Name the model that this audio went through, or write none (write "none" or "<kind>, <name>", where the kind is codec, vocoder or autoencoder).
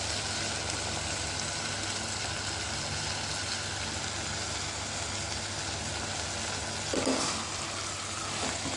none